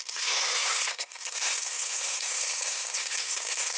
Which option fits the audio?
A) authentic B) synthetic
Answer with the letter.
B